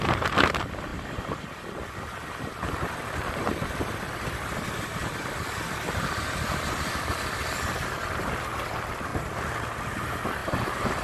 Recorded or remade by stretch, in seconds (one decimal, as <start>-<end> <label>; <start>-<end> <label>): 0.0-9.1 remade; 9.1-9.9 recorded; 9.9-11.0 remade